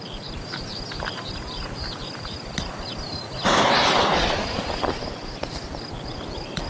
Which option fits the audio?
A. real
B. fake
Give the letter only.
A